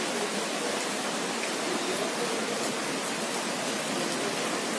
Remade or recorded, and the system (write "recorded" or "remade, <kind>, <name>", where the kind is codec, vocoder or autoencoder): recorded